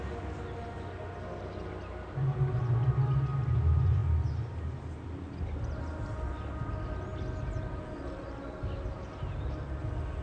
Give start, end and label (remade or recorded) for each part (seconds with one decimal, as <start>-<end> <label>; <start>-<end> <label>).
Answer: 0.0-10.2 recorded

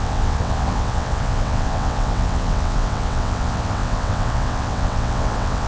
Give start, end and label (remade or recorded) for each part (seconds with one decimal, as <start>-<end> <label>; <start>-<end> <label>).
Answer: 0.0-5.7 remade

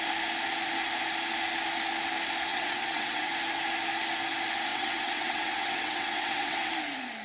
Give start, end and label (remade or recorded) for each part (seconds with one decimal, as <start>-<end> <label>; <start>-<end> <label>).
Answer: 0.0-2.5 recorded; 2.5-3.3 remade; 3.3-4.7 recorded; 4.7-6.7 remade; 6.7-7.2 recorded